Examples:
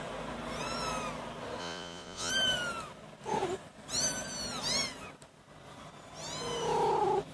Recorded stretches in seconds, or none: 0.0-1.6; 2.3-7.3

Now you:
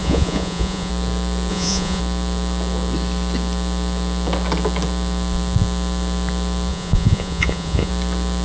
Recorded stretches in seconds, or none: 0.9-1.5; 2.0-6.7; 7.9-8.4

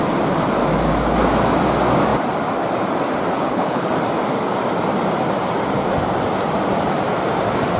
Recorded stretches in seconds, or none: 0.0-3.3; 3.9-7.8

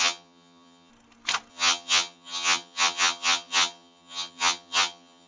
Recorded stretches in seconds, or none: 0.9-1.5

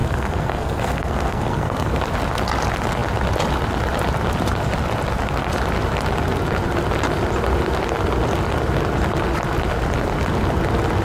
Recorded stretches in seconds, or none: 2.0-11.0

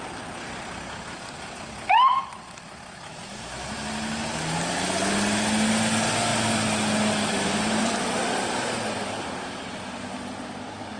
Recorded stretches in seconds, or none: 0.0-6.3; 9.4-11.0

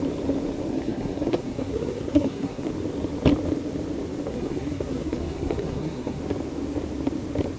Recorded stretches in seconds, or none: 0.0-0.7; 2.7-4.3; 6.2-7.6

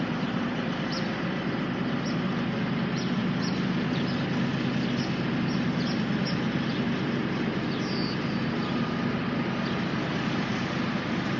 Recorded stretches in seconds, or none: 0.0-11.4